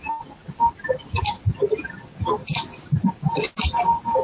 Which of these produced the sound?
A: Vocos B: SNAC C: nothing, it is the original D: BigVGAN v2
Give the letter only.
C